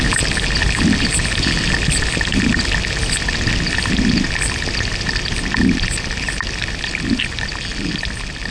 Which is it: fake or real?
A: real